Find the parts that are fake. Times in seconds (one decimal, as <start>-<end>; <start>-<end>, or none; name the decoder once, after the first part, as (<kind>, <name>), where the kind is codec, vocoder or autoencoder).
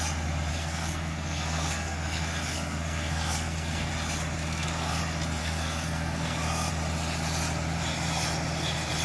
0.5-3.9 (codec, SNAC); 4.4-5.0; 5.4-6.7